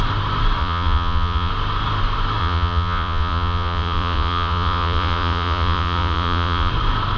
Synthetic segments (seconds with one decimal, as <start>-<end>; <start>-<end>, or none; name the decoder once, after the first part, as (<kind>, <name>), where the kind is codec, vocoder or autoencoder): 0.6-1.5 (vocoder, Vocos); 2.4-6.7